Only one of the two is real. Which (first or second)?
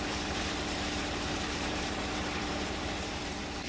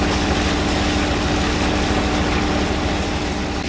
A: second